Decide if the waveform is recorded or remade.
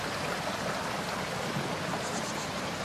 recorded